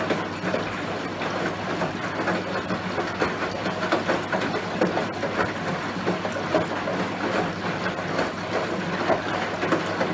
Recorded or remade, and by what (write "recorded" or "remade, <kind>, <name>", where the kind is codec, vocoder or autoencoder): recorded